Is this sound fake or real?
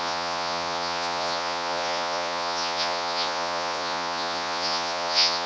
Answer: fake